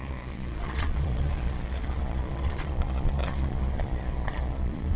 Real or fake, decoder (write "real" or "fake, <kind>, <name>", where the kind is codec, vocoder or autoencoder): fake, vocoder, Vocos